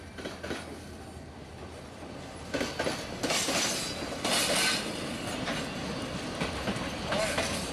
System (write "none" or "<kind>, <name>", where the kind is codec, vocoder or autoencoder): none